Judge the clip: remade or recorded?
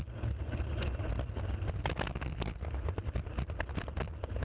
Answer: recorded